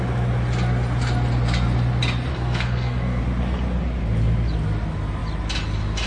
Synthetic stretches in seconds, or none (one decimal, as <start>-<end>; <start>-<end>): 2.3-3.2